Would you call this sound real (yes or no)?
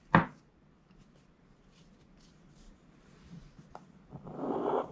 yes